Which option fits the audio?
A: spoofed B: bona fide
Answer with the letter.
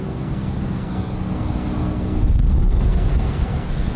A